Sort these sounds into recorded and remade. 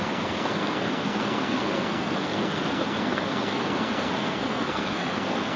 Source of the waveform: remade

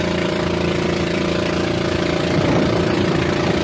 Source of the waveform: remade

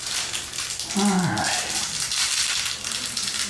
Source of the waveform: recorded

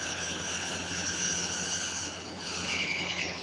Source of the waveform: remade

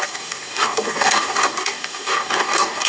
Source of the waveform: remade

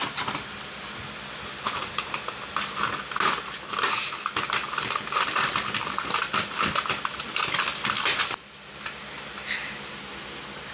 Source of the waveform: recorded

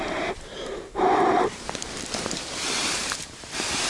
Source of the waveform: remade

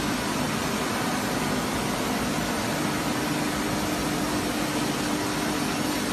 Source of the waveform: recorded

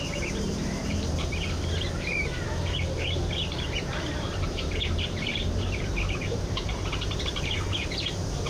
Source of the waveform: remade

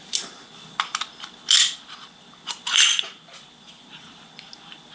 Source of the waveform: recorded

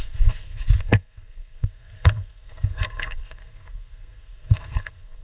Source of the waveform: remade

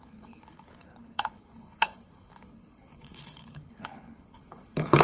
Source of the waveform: remade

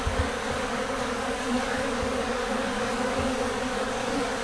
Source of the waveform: remade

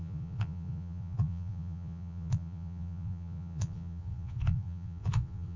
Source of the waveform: remade